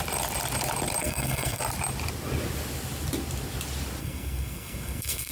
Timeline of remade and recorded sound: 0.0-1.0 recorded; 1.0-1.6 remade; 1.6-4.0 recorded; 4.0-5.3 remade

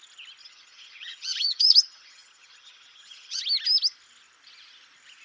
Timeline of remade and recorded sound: 0.0-0.4 recorded; 0.4-3.4 remade; 3.4-5.2 recorded